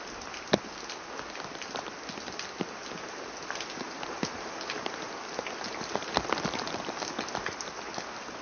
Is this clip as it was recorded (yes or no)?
yes